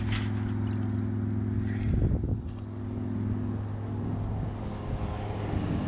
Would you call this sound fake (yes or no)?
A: no